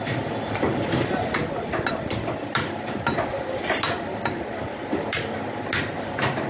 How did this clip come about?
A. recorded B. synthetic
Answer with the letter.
A